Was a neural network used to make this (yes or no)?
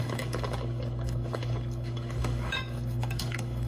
yes